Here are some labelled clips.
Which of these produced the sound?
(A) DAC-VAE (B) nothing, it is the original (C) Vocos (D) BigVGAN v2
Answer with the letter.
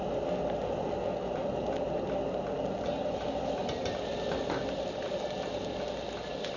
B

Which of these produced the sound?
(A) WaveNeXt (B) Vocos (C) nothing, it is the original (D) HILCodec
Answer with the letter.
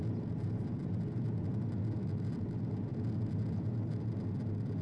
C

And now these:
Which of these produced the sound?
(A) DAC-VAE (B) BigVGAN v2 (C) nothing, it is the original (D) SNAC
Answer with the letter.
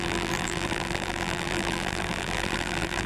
B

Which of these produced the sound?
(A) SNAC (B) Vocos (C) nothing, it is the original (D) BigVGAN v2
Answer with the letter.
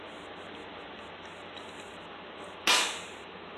C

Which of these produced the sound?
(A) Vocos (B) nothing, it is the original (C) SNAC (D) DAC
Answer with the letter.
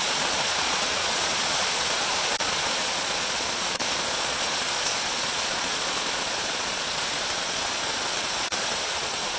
A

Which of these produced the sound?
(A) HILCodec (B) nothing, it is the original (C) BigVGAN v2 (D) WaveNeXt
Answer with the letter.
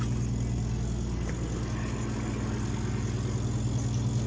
B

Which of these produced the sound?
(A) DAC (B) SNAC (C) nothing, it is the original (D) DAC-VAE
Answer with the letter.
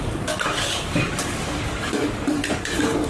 A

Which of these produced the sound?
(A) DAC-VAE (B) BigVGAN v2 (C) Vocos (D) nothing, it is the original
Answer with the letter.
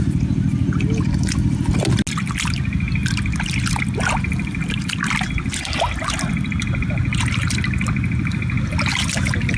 D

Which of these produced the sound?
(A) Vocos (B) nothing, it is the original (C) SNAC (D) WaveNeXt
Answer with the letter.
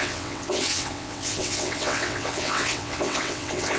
D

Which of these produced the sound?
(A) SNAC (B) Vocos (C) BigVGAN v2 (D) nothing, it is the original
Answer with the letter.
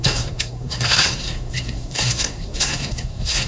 A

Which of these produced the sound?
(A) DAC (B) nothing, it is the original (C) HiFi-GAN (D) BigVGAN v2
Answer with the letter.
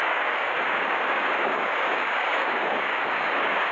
A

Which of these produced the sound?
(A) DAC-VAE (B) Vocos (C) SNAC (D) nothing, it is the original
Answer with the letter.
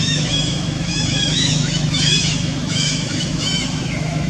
A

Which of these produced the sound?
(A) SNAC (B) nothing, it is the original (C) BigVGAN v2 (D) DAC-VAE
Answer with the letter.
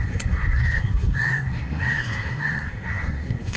A